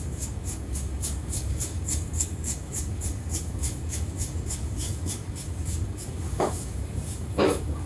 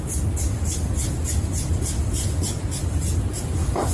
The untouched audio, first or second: second